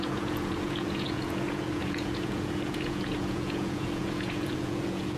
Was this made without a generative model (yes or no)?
no